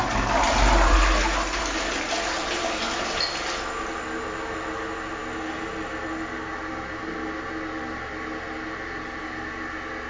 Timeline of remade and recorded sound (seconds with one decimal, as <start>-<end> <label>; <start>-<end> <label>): 0.0-10.1 recorded